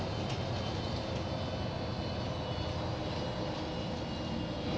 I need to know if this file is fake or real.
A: real